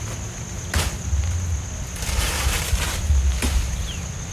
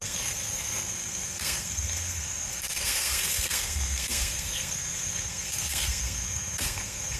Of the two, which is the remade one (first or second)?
second